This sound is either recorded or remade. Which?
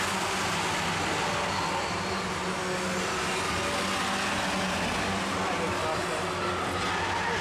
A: recorded